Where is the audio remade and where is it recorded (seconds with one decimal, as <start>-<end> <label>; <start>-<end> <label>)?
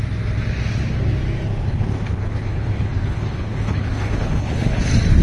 0.0-1.7 recorded; 1.7-4.8 remade; 4.8-5.2 recorded